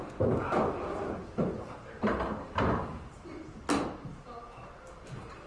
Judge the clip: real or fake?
real